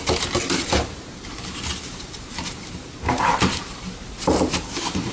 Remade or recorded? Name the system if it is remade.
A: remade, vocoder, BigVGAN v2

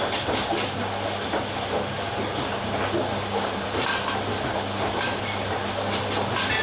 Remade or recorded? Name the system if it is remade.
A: recorded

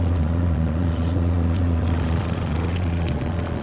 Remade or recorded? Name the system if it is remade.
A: remade, vocoder, Vocos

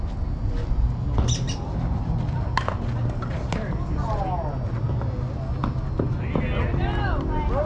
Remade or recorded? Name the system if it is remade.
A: recorded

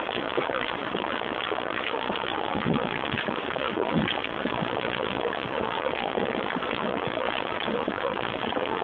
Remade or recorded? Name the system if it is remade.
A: remade, vocoder, Vocos